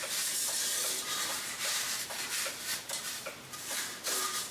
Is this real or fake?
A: fake